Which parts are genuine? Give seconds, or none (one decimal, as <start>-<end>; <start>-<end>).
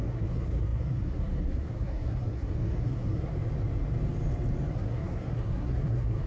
3.3-4.7